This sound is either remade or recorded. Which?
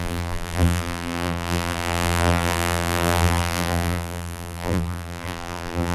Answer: remade